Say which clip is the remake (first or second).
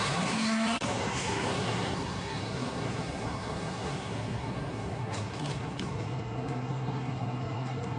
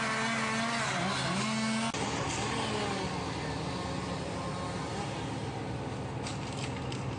first